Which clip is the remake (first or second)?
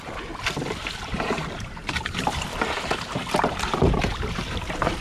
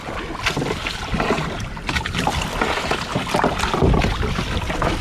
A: first